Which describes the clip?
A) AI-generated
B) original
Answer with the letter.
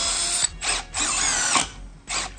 B